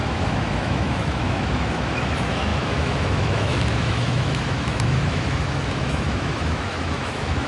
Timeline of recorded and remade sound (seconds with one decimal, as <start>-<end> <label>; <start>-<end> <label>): 0.0-7.5 remade